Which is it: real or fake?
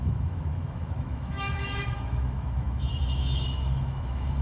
fake